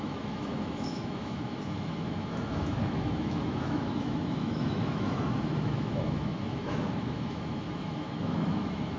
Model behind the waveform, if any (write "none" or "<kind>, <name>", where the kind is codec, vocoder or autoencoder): autoencoder, DAC-VAE